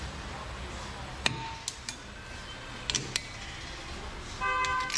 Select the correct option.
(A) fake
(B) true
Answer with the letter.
B